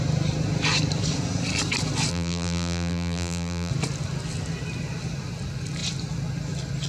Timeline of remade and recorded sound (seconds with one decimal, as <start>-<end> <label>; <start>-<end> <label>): 0.0-2.1 recorded; 2.1-3.7 remade; 3.7-6.9 recorded